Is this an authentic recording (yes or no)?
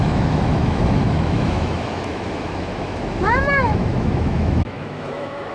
no